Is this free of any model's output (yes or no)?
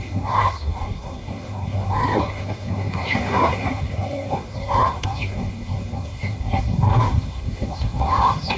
no